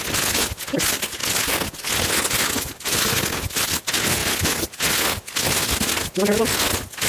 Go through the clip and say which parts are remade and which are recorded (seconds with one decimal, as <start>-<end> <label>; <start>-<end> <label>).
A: 0.0-7.1 recorded